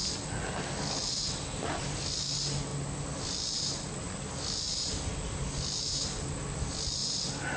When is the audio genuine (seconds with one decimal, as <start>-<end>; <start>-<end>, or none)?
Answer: 0.0-7.6